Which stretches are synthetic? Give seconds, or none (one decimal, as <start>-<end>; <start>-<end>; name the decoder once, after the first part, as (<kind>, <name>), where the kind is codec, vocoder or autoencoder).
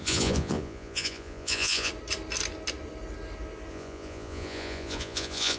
0.0-1.9 (vocoder, Vocos); 3.7-5.6